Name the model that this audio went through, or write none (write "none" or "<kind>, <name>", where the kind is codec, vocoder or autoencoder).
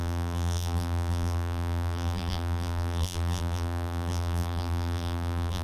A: vocoder, BigVGAN v2